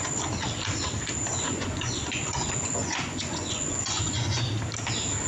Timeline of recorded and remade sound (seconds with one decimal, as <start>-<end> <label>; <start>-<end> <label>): 0.0-1.3 recorded; 1.3-4.5 remade; 4.5-5.3 recorded